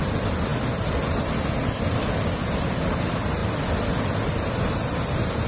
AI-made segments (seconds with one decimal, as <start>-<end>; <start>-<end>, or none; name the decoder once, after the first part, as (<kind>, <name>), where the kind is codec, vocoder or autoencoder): none